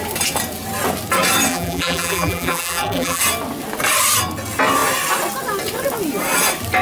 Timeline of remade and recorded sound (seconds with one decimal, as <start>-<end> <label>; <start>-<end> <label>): 0.0-1.5 recorded; 1.5-3.2 remade; 3.2-6.8 recorded